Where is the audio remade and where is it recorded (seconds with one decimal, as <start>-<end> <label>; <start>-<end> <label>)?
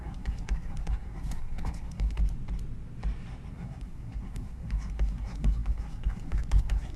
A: 0.0-2.2 remade; 2.2-3.5 recorded; 3.5-7.0 remade